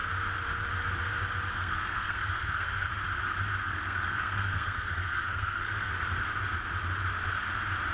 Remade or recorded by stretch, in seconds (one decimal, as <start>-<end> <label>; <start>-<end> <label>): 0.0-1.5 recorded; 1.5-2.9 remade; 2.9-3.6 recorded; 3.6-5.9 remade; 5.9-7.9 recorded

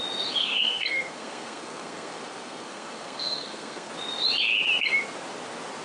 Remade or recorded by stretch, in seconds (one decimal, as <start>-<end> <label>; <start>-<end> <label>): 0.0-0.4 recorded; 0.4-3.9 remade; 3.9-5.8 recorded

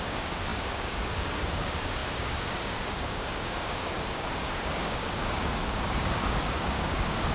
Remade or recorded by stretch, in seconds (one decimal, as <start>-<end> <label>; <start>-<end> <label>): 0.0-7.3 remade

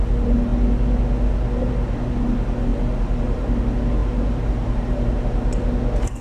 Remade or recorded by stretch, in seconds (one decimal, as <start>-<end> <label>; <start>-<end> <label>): 0.0-2.7 recorded; 2.7-3.6 remade; 3.6-4.0 recorded; 4.0-5.1 remade; 5.1-6.2 recorded